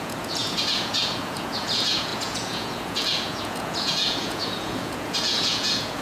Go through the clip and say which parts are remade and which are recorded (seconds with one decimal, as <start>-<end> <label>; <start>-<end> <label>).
0.0-6.0 remade